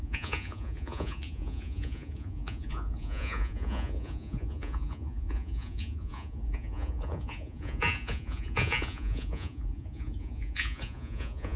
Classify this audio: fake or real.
fake